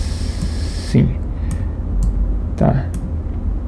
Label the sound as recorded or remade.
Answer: recorded